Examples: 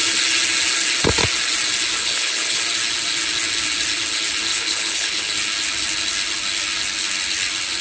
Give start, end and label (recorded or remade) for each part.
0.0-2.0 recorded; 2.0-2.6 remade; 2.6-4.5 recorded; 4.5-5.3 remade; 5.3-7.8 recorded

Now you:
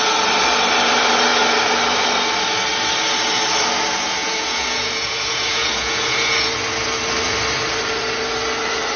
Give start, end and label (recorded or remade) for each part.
0.0-4.2 recorded; 4.2-6.5 remade; 6.5-9.0 recorded

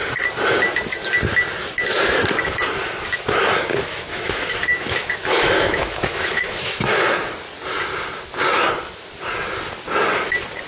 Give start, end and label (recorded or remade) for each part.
0.0-3.7 recorded; 3.7-7.0 remade; 7.0-10.7 recorded